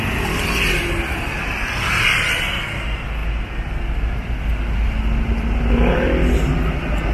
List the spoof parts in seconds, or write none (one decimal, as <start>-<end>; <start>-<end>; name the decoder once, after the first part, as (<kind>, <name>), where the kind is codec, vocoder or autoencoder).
none